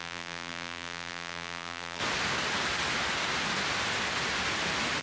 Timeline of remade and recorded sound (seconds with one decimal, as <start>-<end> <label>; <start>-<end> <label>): 0.0-2.0 remade; 2.0-5.0 recorded